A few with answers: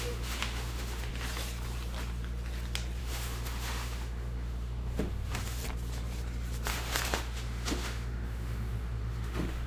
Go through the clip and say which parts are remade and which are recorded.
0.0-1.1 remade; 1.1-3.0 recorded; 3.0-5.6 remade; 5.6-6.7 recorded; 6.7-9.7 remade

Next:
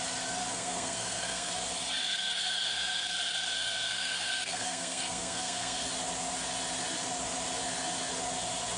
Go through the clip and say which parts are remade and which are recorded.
0.0-0.4 recorded; 0.4-1.5 remade; 1.5-2.0 recorded; 2.0-5.9 remade; 5.9-8.8 recorded

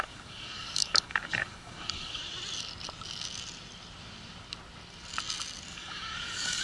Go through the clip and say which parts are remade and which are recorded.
0.0-2.2 remade; 2.2-5.7 recorded; 5.7-6.6 remade

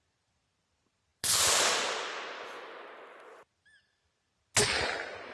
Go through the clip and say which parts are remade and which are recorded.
0.0-5.3 recorded

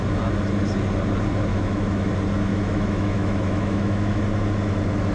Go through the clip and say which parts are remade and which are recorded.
0.0-1.5 recorded; 1.5-2.1 remade; 2.1-2.5 recorded; 2.5-4.2 remade; 4.2-5.1 recorded

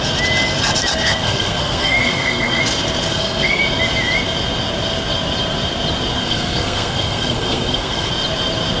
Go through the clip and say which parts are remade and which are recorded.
0.0-0.9 recorded; 0.9-2.6 remade; 2.6-3.1 recorded; 3.1-3.6 remade; 3.6-6.2 recorded; 6.2-8.1 remade; 8.1-8.8 recorded

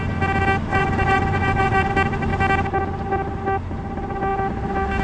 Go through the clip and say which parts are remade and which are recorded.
0.0-0.7 recorded; 0.7-1.9 remade; 1.9-5.0 recorded